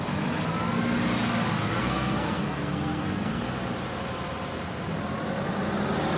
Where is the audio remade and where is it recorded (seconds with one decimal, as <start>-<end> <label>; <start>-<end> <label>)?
0.0-1.8 recorded; 1.8-3.4 remade; 3.4-6.2 recorded